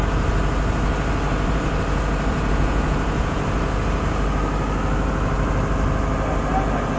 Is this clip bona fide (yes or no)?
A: yes